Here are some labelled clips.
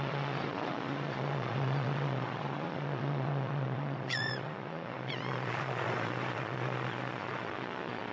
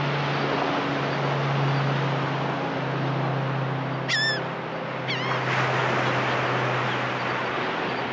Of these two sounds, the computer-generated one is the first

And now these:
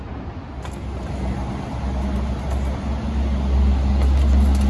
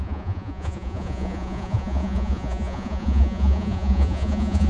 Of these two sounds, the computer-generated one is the second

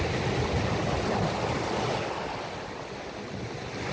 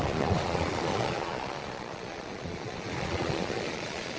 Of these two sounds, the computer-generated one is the second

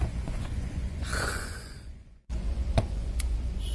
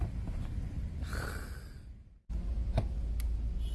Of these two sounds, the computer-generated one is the first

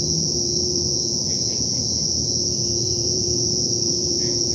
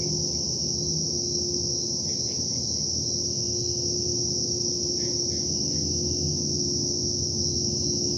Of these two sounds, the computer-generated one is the first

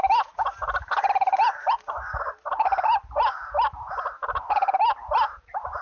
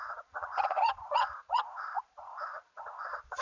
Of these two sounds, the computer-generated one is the second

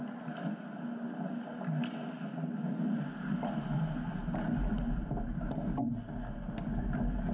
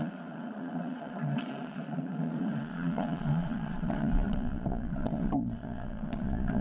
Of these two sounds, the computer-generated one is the second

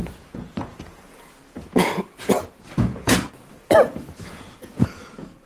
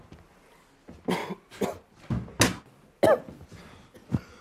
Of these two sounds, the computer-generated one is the first